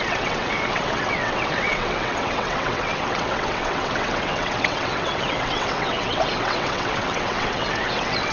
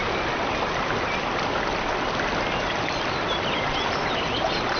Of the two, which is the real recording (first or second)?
second